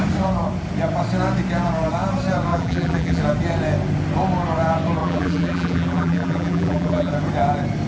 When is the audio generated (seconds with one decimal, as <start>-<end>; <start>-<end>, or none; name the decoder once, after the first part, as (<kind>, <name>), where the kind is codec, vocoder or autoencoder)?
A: 2.5-3.2 (vocoder, BigVGAN v2); 5.0-7.1